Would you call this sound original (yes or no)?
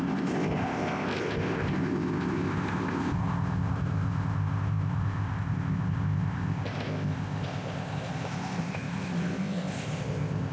no